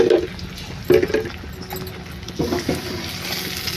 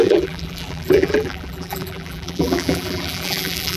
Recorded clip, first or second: first